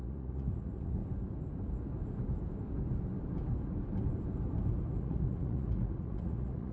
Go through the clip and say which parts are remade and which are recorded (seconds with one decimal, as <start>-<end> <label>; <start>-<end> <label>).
0.0-1.0 remade; 1.0-5.0 recorded; 5.0-6.7 remade